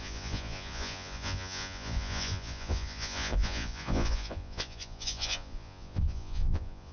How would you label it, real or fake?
fake